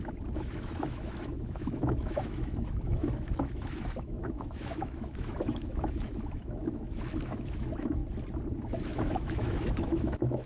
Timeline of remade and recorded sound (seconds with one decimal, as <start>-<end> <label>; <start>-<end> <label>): 0.0-8.0 remade; 8.0-8.7 recorded; 8.7-10.5 remade